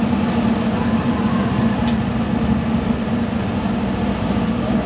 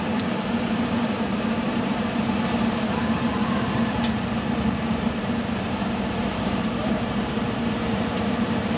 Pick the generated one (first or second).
second